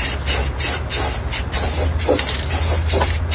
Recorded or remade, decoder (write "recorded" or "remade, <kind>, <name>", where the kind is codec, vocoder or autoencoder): recorded